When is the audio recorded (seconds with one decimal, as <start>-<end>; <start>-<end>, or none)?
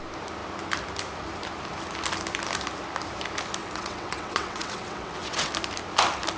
0.0-3.6; 5.5-6.4